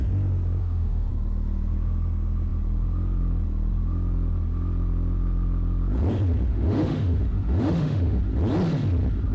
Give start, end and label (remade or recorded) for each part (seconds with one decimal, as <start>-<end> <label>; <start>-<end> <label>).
0.0-0.6 recorded; 0.6-1.1 remade; 1.1-6.5 recorded; 6.5-8.2 remade; 8.2-9.3 recorded